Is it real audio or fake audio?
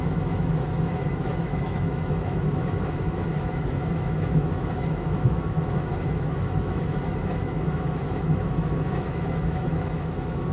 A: fake